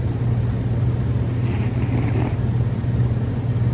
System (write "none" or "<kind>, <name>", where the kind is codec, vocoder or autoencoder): none